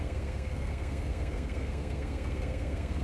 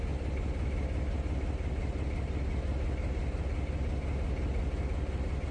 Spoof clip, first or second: first